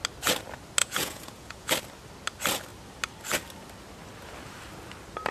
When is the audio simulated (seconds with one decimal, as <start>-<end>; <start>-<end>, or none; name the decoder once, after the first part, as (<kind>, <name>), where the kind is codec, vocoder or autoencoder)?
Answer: 0.8-1.7 (vocoder, Vocos)